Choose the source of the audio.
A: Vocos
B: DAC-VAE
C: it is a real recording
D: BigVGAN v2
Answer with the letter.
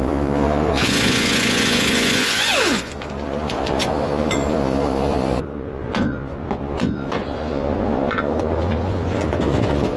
A